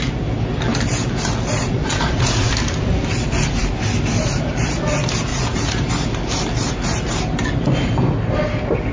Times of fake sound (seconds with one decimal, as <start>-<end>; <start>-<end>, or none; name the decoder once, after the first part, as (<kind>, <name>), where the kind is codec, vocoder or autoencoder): 1.6-2.5 (vocoder, Vocos); 5.3-5.9